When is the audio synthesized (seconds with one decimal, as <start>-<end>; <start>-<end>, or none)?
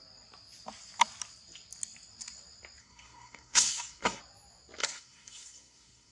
2.8-4.2; 4.8-6.1